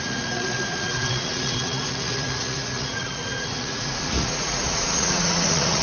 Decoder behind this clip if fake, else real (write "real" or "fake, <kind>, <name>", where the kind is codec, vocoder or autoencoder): fake, vocoder, Vocos